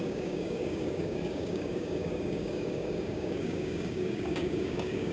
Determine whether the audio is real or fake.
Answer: fake